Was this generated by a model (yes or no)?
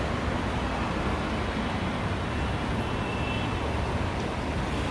no